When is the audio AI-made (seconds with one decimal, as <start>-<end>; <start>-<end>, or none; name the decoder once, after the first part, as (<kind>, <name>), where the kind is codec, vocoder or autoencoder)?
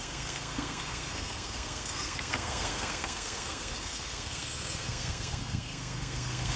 0.0-6.6 (codec, SNAC)